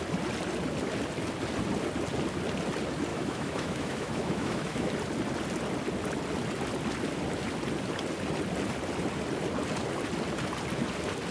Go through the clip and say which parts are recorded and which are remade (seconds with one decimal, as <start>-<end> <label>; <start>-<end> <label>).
0.0-3.1 recorded; 3.1-4.9 remade; 4.9-11.3 recorded